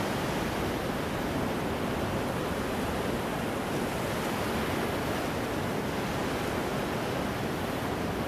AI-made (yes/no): no